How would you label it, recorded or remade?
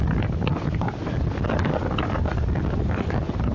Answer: recorded